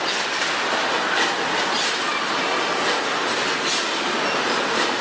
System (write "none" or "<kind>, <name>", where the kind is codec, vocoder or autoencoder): none